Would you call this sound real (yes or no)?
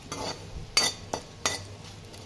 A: yes